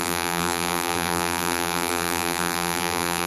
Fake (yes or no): yes